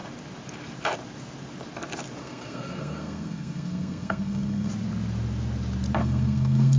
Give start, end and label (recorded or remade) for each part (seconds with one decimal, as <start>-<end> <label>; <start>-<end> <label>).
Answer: 0.0-2.2 recorded; 2.2-4.7 remade; 4.7-6.0 recorded; 6.0-6.8 remade